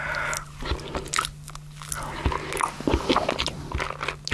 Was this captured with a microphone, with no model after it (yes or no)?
yes